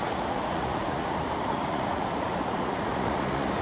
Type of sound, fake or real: fake